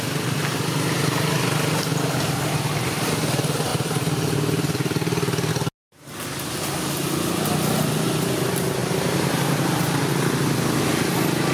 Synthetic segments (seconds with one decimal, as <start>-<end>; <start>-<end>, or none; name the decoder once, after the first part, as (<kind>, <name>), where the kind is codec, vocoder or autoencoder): 8.8-9.6 (vocoder, BigVGAN v2)